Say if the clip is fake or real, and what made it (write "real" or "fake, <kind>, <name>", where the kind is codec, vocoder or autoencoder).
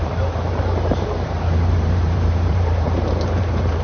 fake, vocoder, BigVGAN v2